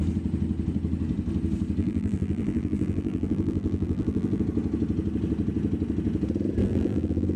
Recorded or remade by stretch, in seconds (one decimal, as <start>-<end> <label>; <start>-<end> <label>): 0.0-1.8 recorded; 1.8-4.4 remade; 4.4-6.6 recorded; 6.6-7.4 remade